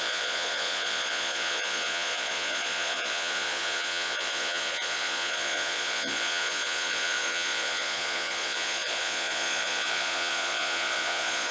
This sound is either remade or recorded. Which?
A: remade